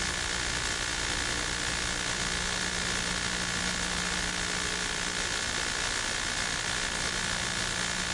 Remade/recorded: recorded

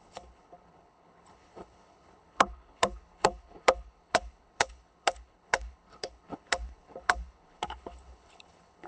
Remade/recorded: remade